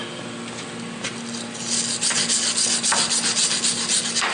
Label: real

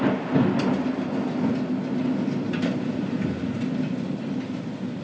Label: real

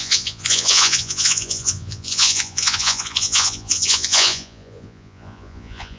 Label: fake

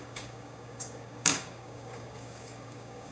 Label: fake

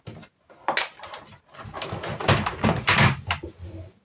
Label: real